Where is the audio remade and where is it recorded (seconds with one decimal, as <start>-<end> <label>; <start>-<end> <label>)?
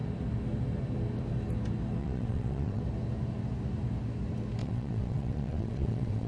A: 0.0-2.0 recorded; 2.0-2.8 remade; 2.8-4.6 recorded; 4.6-6.3 remade